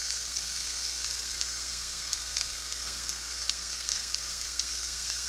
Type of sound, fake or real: fake